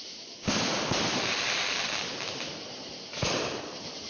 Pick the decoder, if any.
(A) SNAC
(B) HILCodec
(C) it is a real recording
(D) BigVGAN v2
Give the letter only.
C